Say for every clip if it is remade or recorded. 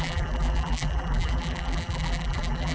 remade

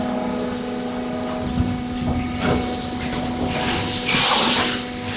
recorded